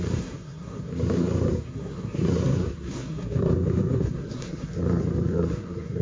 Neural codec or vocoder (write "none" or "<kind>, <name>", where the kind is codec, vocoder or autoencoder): codec, SNAC